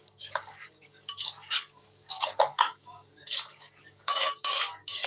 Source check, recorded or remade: remade